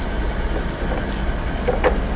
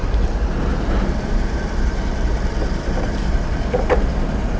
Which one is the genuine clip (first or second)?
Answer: first